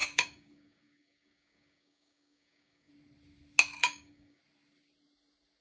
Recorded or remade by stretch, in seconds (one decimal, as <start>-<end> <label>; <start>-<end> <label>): 0.0-2.9 remade; 2.9-3.8 recorded; 3.8-4.4 remade; 4.4-5.6 recorded